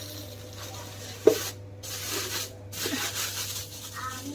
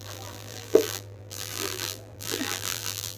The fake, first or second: second